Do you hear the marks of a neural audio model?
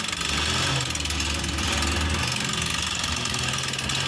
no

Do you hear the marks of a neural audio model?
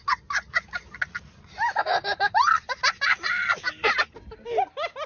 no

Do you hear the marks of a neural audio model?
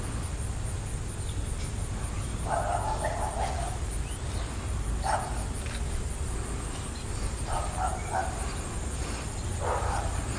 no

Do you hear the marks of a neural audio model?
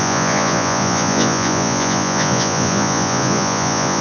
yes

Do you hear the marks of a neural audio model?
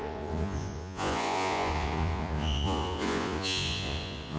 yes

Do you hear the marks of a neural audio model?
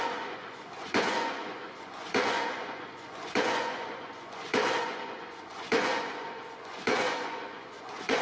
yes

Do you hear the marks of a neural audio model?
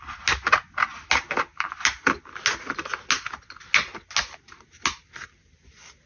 no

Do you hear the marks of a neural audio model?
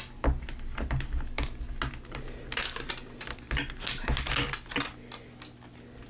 no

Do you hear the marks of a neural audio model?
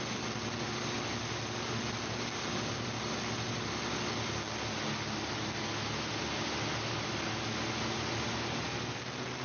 no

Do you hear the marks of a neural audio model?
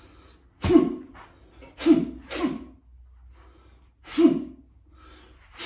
no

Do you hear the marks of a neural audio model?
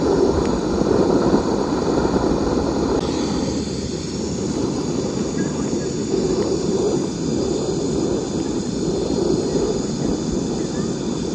no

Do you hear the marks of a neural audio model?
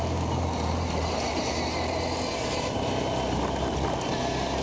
no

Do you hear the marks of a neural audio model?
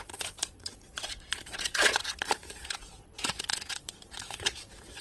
yes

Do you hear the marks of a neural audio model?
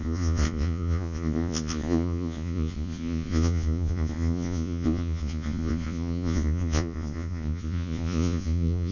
yes